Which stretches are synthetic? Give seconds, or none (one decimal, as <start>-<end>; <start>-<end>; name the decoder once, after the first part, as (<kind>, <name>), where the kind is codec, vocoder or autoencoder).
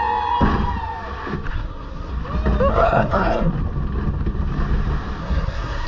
1.5-2.1 (codec, SNAC); 2.7-3.5; 5.2-5.9